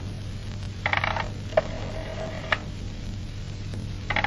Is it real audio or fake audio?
real